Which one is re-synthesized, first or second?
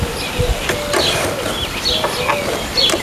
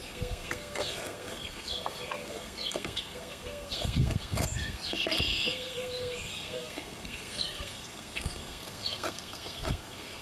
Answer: second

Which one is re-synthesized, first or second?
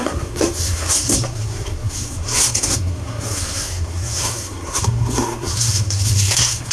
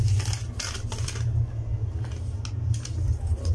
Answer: first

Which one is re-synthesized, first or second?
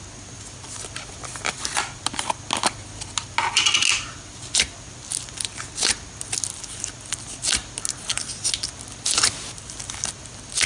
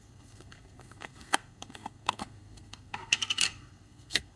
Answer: second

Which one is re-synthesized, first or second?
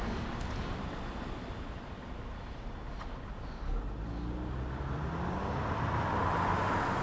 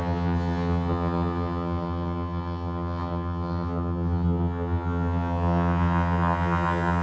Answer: second